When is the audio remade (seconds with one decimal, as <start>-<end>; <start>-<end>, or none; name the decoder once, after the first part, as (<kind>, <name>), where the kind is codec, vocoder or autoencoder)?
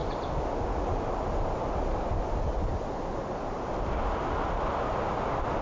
none